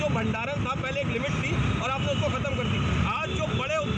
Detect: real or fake real